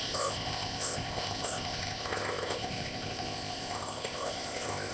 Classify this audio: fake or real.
fake